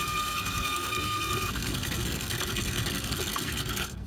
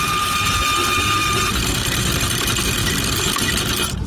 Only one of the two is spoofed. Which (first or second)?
first